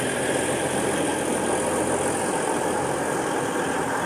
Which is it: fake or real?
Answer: real